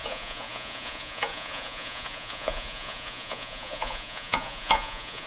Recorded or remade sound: remade